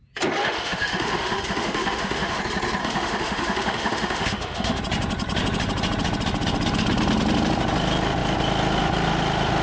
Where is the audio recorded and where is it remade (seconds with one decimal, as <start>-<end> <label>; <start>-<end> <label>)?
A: 0.0-0.4 recorded; 0.4-2.4 remade; 2.4-2.8 recorded; 2.8-4.8 remade; 4.8-9.6 recorded